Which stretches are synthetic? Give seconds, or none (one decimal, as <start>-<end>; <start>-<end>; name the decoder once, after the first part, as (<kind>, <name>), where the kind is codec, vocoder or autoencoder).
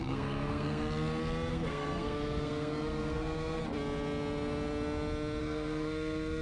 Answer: 0.0-0.8 (codec, SNAC); 1.5-3.6; 5.4-6.4